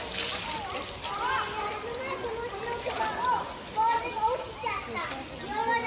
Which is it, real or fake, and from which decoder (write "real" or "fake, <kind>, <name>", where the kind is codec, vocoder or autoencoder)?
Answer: real